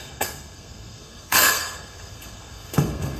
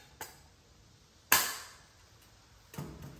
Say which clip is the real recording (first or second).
second